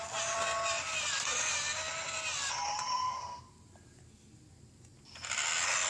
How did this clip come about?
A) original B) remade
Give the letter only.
A